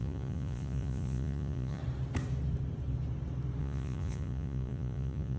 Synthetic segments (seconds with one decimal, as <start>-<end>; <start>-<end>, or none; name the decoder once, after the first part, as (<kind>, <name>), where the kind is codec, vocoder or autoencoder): 0.0-1.8 (vocoder, Vocos); 3.6-5.4

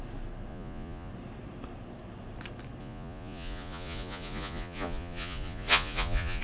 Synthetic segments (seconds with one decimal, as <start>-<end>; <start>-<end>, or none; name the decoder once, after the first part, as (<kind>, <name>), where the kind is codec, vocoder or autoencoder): 0.5-1.1 (vocoder, Vocos); 2.8-6.4

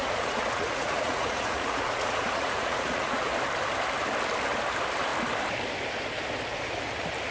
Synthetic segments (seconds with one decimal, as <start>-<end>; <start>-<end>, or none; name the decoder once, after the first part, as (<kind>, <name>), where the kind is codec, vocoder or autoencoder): 0.0-3.3 (vocoder, Vocos)

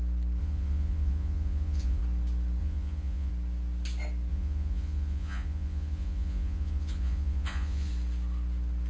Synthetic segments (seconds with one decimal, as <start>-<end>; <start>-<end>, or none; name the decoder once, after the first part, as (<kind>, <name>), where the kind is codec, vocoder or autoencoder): 0.4-2.0 (vocoder, Vocos); 2.6-3.3; 4.3-7.9

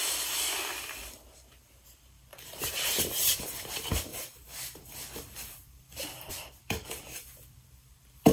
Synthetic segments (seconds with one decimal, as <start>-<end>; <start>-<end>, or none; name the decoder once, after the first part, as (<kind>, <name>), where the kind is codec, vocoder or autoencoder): none

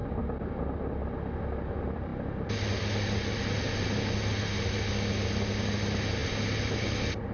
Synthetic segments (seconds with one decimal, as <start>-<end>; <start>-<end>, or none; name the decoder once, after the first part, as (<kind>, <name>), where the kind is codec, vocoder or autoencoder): none

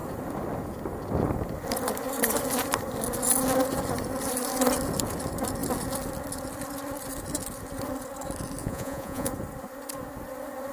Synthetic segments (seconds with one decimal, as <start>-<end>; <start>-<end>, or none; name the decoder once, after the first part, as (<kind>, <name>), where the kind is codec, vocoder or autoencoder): 8.6-9.3 (vocoder, Vocos)

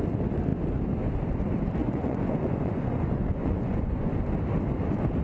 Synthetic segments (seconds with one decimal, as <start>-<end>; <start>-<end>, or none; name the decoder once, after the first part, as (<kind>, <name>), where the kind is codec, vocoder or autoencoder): 1.8-4.1 (vocoder, Vocos)